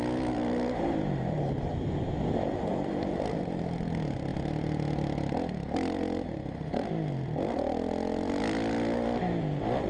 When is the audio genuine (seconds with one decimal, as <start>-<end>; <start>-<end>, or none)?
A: 0.0-9.9